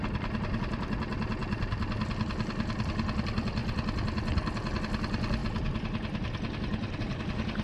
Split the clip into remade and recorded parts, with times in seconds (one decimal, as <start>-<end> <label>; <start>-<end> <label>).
0.0-7.6 recorded